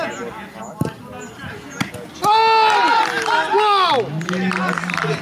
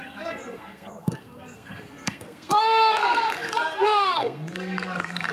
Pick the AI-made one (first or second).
second